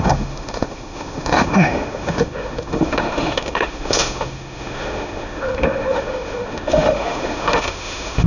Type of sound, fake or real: fake